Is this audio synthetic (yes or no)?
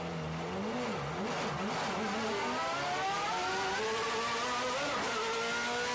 no